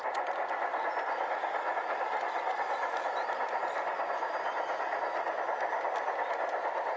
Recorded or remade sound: recorded